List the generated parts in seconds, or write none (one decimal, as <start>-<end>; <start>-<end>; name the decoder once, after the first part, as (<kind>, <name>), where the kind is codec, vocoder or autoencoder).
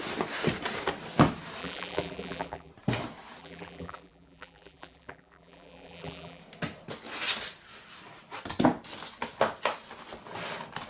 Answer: 1.6-2.7 (vocoder, BigVGAN v2); 3.4-6.4